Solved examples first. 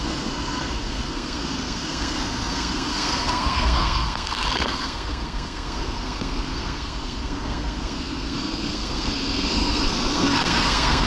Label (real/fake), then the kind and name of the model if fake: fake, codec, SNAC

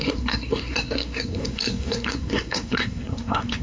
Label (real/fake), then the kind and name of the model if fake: fake, codec, SNAC